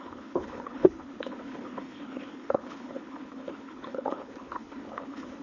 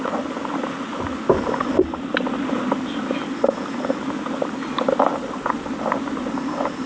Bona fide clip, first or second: second